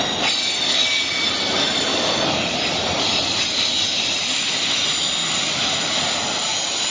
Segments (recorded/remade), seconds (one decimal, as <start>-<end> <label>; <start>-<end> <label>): 0.0-1.9 recorded; 1.9-3.7 remade; 3.7-6.9 recorded